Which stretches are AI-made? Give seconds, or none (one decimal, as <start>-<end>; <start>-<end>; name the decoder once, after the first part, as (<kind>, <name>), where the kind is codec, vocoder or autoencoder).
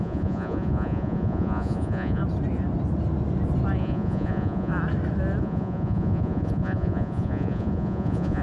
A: 0.0-2.2 (vocoder, Vocos); 3.8-4.7; 5.4-8.4